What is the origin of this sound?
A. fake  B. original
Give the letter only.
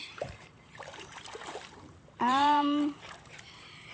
A